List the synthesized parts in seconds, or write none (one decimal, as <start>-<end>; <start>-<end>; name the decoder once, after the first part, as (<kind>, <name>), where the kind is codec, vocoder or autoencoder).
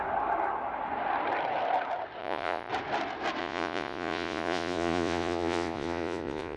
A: 2.2-2.7 (vocoder, Vocos); 3.4-6.6